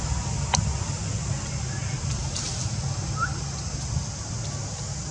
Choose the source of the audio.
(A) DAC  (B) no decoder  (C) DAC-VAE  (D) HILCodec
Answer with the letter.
B